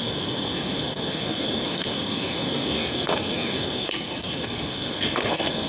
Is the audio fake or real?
fake